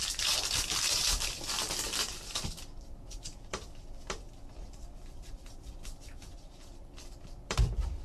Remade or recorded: remade